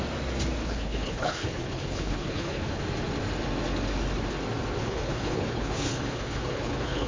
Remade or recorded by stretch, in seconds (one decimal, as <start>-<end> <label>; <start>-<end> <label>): 0.0-0.6 recorded; 0.6-2.8 remade; 2.8-4.8 recorded; 4.8-7.1 remade